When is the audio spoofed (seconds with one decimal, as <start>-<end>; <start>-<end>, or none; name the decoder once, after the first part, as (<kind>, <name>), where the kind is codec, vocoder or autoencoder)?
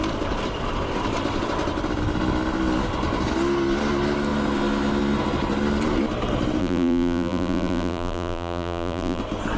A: 6.6-9.2 (vocoder, BigVGAN v2)